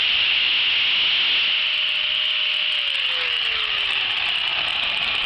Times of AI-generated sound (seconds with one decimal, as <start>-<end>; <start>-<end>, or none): 0.0-0.5; 3.7-5.3